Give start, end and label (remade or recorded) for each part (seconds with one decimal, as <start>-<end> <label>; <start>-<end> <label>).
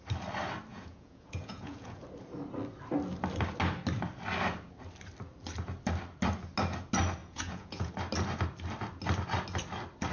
0.0-0.7 recorded; 0.7-2.0 remade; 2.0-7.2 recorded; 7.2-7.9 remade; 7.9-10.1 recorded